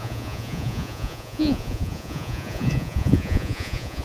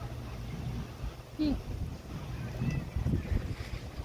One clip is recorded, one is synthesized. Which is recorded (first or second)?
second